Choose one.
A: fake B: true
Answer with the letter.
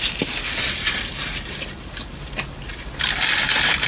B